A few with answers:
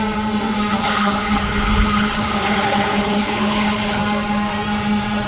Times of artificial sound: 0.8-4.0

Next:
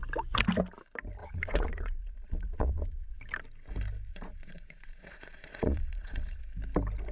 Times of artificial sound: 1.2-3.2; 4.1-6.4

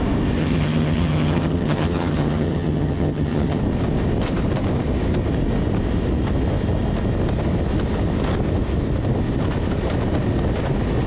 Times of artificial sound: 0.4-3.6